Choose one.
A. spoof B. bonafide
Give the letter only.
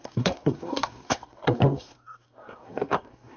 A